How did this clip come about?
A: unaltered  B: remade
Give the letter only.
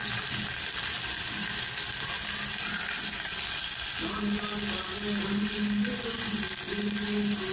A